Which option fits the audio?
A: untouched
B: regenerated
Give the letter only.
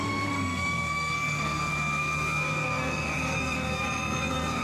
B